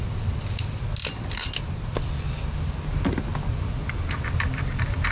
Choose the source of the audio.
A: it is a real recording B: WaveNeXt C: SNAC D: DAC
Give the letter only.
A